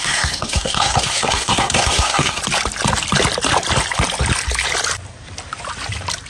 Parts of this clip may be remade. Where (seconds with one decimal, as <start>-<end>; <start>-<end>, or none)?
0.0-2.4